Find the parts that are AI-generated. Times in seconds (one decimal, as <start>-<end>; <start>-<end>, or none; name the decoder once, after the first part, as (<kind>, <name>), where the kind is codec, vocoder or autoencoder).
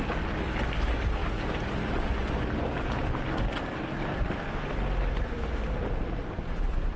6.2-7.0 (vocoder, BigVGAN v2)